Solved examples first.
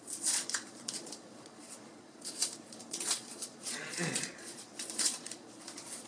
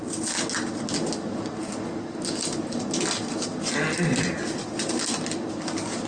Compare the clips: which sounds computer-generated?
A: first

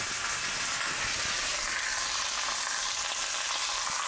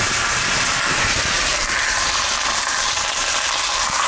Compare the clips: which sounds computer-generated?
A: second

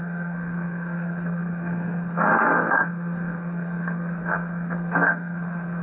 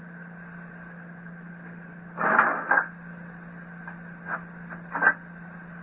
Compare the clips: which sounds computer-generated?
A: first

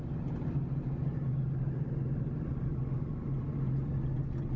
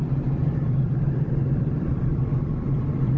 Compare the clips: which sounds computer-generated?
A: second